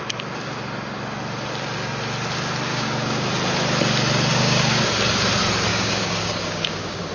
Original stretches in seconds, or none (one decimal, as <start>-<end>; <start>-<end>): 0.0-2.7; 3.3-4.3; 4.9-5.7